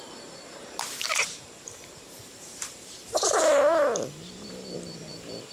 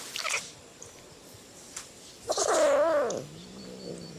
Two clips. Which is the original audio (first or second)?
second